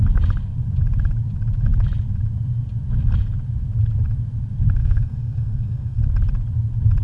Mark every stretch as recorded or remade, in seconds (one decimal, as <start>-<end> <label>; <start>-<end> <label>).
0.0-4.8 recorded; 4.8-6.0 remade; 6.0-7.0 recorded